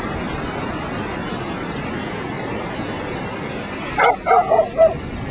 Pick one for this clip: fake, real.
fake